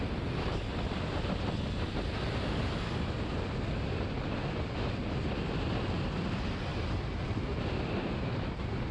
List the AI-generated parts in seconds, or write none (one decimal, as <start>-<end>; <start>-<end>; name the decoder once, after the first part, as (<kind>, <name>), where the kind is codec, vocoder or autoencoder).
none